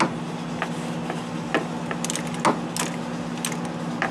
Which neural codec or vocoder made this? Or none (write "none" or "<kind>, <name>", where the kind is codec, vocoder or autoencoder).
none